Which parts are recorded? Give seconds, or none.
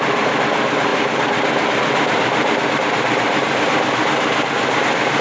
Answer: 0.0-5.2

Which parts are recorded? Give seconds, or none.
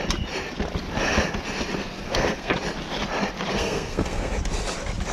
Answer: 0.0-1.8; 2.5-3.5; 4.3-5.1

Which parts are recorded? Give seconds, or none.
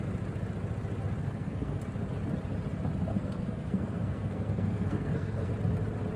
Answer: 0.0-1.2; 1.8-3.1; 5.5-6.2